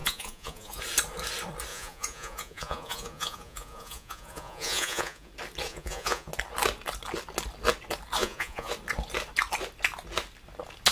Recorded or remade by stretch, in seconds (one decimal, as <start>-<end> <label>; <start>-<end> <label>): 0.0-0.8 remade; 0.8-1.7 recorded; 1.7-5.3 remade; 5.3-5.7 recorded; 5.7-6.3 remade; 6.3-8.2 recorded; 8.2-8.7 remade; 8.7-10.9 recorded